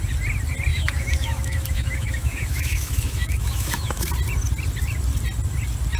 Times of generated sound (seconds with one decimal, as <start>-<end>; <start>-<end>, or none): 0.7-4.1